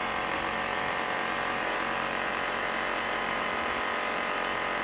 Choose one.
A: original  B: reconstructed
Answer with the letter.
B